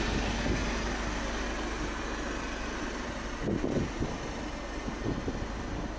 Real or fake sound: real